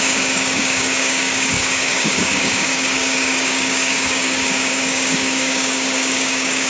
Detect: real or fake fake